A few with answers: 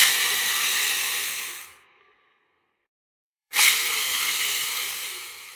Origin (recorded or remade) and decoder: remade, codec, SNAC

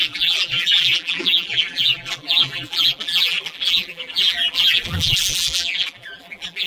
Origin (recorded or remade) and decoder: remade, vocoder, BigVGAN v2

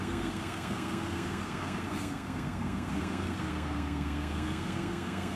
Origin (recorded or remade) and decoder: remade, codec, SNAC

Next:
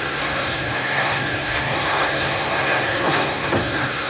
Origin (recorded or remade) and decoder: remade, codec, SNAC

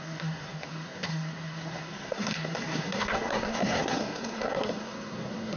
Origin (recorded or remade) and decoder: remade, codec, SNAC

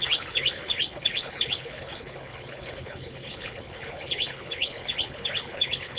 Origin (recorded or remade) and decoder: remade, codec, HILCodec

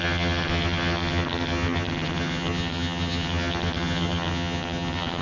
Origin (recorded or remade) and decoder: remade, vocoder, HiFi-GAN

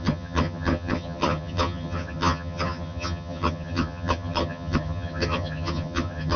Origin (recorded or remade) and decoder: remade, vocoder, HiFi-GAN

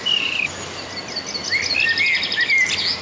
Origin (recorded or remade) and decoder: recorded